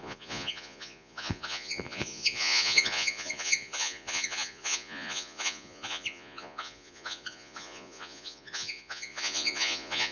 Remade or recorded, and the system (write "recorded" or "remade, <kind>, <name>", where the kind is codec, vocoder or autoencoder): remade, vocoder, Vocos